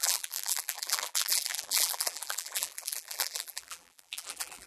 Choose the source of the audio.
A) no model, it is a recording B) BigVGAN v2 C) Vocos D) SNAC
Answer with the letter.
B